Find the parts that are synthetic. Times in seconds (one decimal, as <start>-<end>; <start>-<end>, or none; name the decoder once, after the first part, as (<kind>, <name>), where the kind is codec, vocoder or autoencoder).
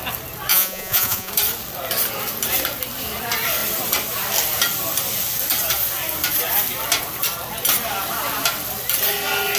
0.5-1.3 (vocoder, Vocos)